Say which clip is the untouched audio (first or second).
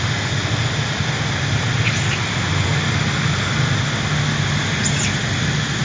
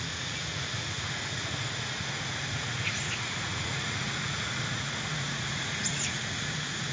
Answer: first